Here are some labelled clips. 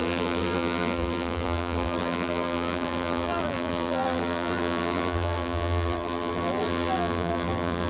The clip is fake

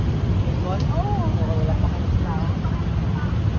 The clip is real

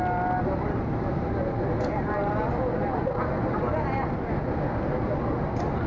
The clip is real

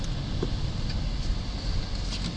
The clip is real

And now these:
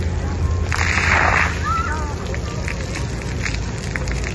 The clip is real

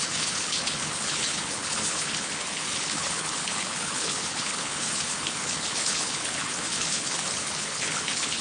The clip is fake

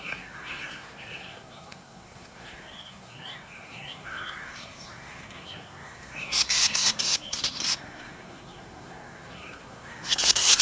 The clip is fake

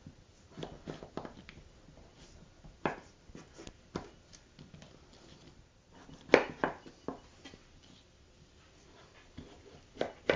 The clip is real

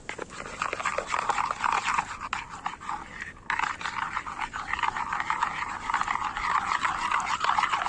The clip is real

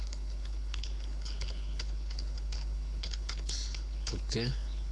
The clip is fake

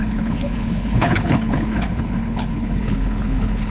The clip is fake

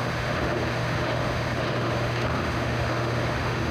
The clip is fake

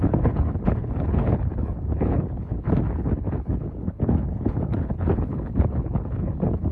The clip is fake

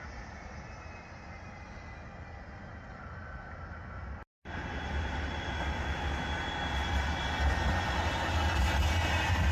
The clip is real